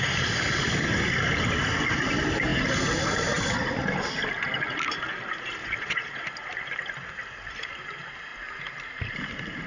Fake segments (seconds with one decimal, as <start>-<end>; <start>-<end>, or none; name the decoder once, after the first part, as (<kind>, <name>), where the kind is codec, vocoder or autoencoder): 5.6-6.2 (vocoder, Vocos)